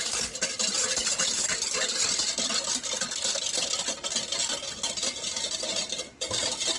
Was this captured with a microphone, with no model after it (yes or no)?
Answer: yes